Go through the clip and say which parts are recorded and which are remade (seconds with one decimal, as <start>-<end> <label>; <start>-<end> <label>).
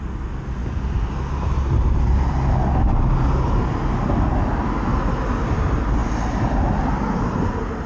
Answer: 0.0-7.9 recorded